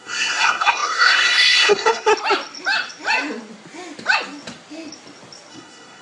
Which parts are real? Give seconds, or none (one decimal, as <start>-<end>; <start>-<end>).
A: 2.1-5.5